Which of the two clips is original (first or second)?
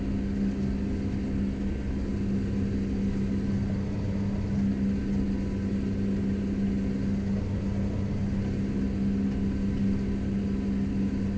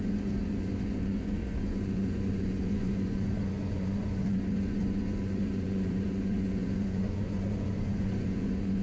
first